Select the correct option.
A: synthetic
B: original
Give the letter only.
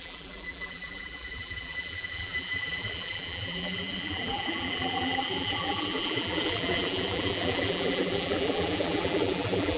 A